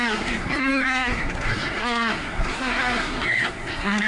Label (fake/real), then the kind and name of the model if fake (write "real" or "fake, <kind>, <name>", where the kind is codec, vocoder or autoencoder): fake, codec, SNAC